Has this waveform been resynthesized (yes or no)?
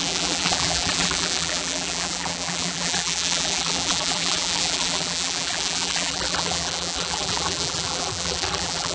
yes